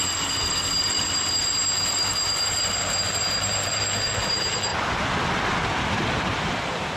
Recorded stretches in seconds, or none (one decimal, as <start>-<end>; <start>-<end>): 0.0-7.0